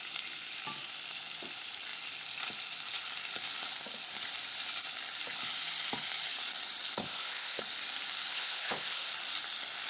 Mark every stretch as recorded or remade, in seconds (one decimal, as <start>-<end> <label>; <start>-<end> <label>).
0.0-7.0 recorded; 7.0-7.6 remade; 7.6-8.3 recorded; 8.3-9.1 remade; 9.1-9.9 recorded